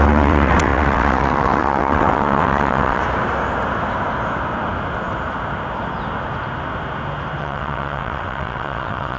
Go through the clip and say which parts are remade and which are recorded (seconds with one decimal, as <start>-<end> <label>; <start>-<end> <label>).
0.0-3.0 remade; 3.0-7.4 recorded; 7.4-9.2 remade